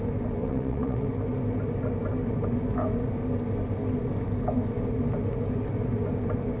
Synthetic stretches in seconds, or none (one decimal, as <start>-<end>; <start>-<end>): 0.4-1.1